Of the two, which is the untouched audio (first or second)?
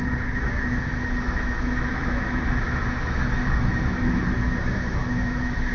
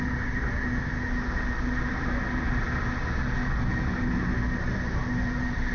second